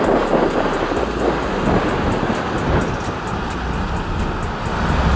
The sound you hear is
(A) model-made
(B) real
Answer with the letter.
B